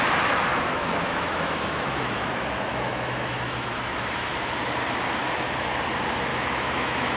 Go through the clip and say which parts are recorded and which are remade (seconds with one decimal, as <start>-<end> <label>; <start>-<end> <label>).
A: 0.0-0.5 recorded; 0.5-2.3 remade; 2.3-2.7 recorded; 2.7-4.3 remade; 4.3-6.3 recorded; 6.3-7.2 remade